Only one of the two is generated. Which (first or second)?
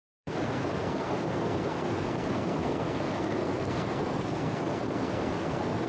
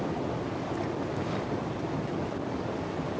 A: first